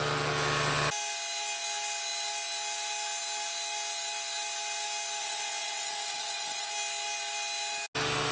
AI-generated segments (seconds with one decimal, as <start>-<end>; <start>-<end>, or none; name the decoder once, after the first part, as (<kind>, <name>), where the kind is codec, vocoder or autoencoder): 5.2-6.7 (vocoder, WaveNeXt)